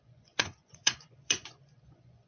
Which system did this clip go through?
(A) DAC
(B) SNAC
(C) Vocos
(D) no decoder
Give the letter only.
C